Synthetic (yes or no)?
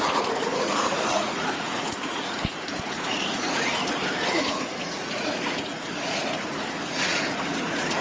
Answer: yes